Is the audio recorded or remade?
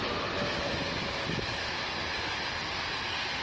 recorded